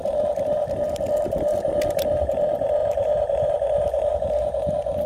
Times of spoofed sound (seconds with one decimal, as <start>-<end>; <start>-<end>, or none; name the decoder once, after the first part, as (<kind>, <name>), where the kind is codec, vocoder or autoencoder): 2.8-4.1 (vocoder, BigVGAN v2)